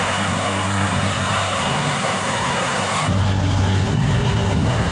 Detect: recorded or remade remade